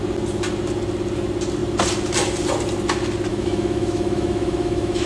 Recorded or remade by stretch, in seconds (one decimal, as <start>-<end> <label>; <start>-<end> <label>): 0.0-3.3 recorded; 3.3-5.1 remade